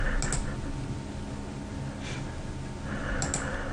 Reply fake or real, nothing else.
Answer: real